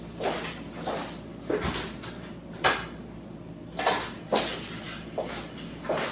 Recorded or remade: recorded